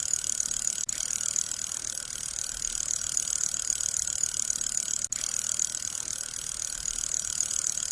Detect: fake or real real